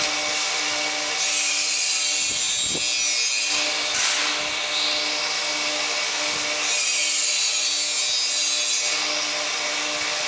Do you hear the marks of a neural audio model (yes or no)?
no